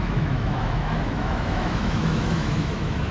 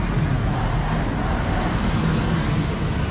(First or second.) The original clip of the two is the second